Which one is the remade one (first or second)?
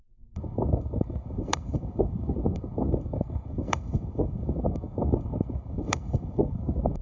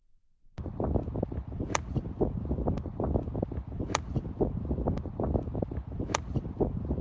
first